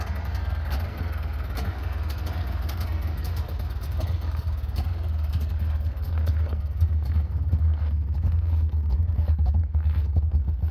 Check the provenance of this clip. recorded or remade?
remade